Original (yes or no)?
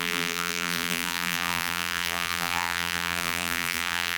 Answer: no